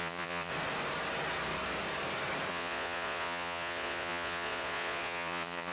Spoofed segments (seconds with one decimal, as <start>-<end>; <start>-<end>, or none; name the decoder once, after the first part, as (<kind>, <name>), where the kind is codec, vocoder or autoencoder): 0.0-0.5 (vocoder, Vocos); 2.5-5.7